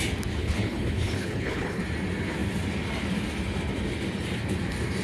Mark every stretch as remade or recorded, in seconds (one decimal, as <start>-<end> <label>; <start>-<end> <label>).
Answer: 0.0-0.4 recorded; 0.4-1.8 remade; 1.8-5.0 recorded